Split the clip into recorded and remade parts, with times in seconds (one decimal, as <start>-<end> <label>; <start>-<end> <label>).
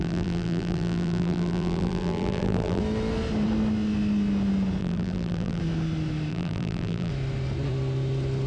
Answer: 0.0-2.8 remade; 2.8-4.8 recorded; 4.8-5.6 remade; 5.6-6.3 recorded; 6.3-7.1 remade; 7.1-8.5 recorded